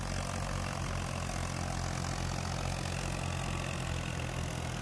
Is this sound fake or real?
real